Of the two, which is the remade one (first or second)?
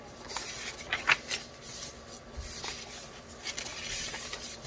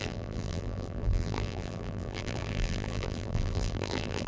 second